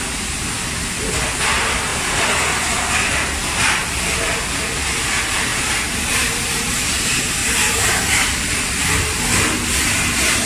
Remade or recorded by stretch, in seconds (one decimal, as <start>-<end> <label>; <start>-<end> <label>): 0.0-5.5 recorded; 5.5-6.7 remade; 6.7-7.4 recorded; 7.4-8.5 remade; 8.5-10.5 recorded